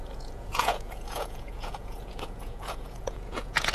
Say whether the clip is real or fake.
fake